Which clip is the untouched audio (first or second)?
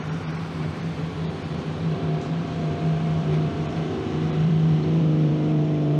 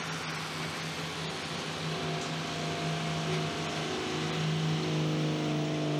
second